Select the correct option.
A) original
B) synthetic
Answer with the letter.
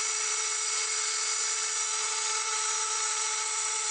B